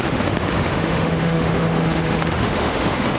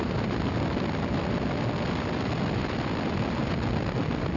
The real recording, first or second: second